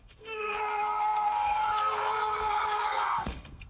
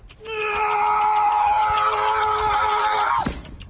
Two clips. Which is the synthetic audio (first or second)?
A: first